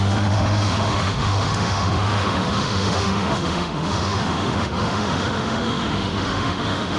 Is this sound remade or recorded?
remade